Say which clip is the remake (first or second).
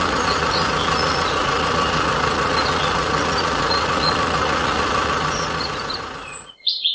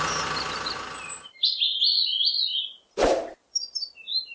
first